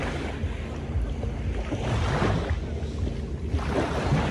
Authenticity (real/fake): real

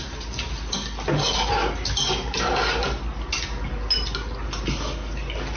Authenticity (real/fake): real